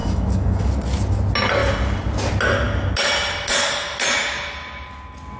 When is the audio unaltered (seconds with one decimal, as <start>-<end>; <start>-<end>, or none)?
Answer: 0.7-5.4